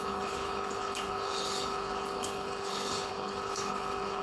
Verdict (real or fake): fake